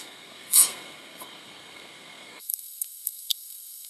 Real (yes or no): no